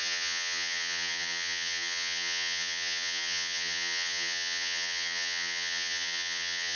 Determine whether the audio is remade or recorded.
remade